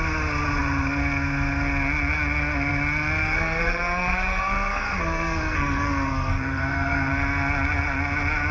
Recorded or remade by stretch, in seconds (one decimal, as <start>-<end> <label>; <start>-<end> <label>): 0.0-3.2 recorded; 3.2-7.1 remade; 7.1-8.5 recorded